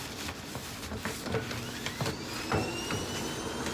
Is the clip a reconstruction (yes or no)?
no